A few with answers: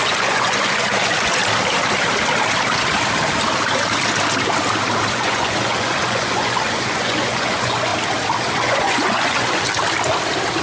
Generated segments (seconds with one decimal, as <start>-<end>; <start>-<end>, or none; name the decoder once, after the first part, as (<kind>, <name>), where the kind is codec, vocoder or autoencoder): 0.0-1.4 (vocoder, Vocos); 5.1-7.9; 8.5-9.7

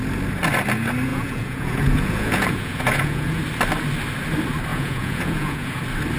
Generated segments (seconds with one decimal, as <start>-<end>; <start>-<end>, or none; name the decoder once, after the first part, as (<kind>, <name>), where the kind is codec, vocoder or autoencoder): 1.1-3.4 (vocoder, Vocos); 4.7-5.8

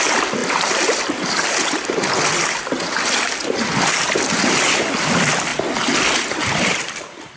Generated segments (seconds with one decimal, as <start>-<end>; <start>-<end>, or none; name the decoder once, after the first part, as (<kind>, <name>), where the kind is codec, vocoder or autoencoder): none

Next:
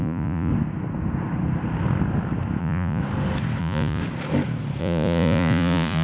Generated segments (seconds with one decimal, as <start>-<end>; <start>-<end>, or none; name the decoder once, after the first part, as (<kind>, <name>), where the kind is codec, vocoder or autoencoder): 0.0-0.5 (vocoder, Vocos); 2.6-3.0; 3.6-4.0; 4.8-6.0